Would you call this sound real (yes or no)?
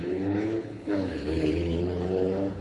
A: no